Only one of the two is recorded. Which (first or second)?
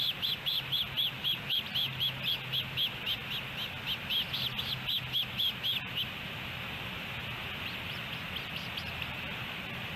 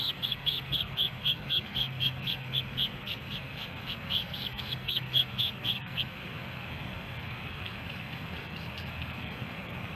first